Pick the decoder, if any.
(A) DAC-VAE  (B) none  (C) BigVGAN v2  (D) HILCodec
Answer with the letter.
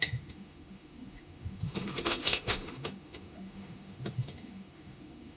A